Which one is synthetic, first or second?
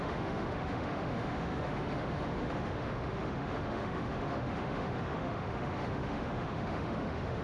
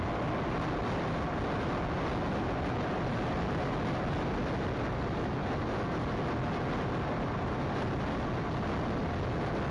first